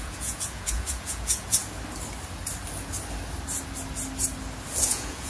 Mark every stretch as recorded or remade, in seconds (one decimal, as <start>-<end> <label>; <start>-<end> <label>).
0.0-1.6 remade; 1.6-4.8 recorded; 4.8-5.3 remade